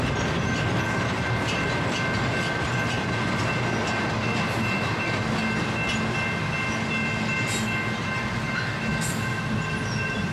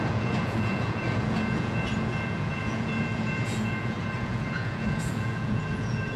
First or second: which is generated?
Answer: second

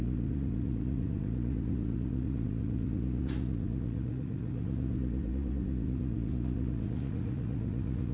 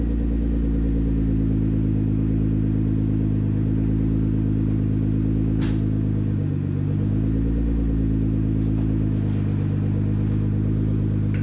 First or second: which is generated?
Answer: first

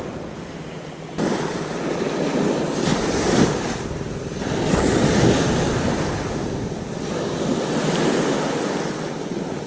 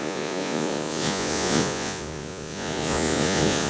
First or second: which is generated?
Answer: second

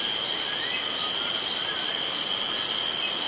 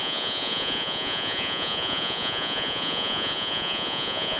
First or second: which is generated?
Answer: second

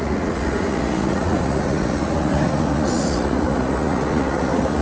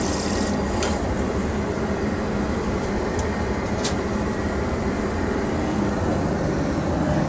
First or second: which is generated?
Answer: first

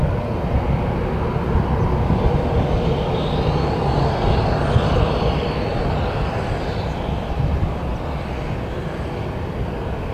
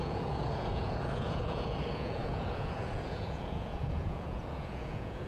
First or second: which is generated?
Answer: second